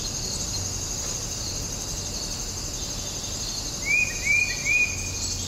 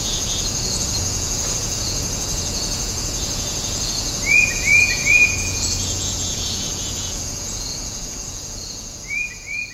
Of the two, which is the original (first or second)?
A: first